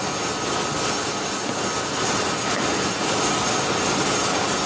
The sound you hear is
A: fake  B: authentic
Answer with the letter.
B